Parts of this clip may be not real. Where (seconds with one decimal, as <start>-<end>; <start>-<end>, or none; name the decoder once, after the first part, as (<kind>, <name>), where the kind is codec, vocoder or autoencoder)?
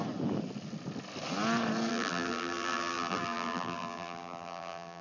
1.9-5.0 (vocoder, BigVGAN v2)